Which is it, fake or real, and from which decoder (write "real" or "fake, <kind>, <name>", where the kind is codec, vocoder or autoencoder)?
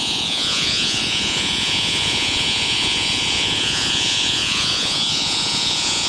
fake, vocoder, Vocos